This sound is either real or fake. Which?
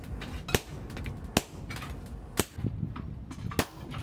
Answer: real